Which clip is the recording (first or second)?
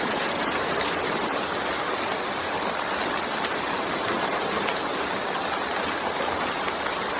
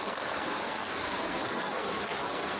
first